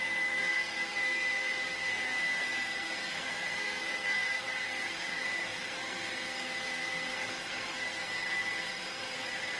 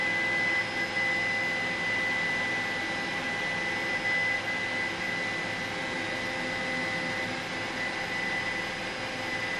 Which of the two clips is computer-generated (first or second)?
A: first